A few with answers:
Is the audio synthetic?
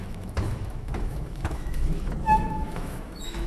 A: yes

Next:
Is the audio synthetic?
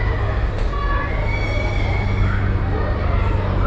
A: no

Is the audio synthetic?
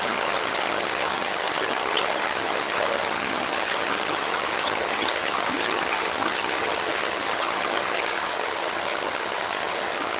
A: yes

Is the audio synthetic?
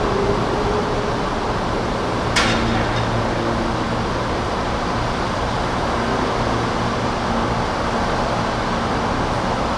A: no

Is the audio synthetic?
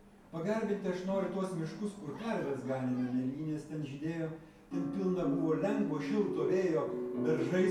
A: no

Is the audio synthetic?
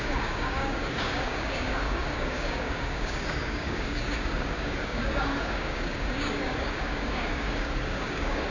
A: yes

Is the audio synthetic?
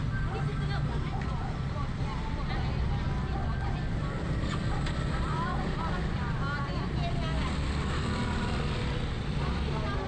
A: no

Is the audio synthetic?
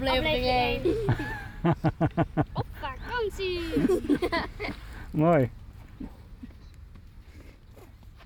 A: no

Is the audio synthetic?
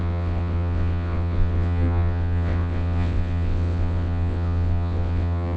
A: yes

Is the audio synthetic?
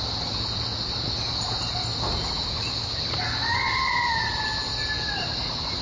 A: no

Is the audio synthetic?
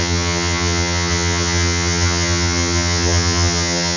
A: yes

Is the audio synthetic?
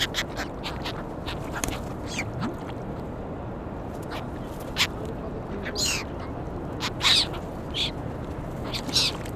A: no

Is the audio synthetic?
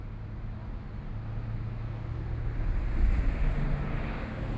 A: no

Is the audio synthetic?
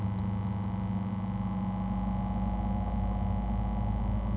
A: no